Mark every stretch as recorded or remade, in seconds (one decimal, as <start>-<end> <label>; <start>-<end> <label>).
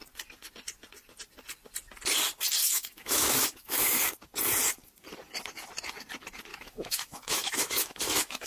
0.0-2.6 recorded; 2.6-4.0 remade; 4.0-6.5 recorded; 6.5-8.5 remade